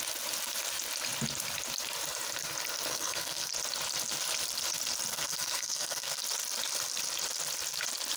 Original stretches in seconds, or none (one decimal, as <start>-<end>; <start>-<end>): 0.0-2.9; 3.5-5.1; 6.2-8.2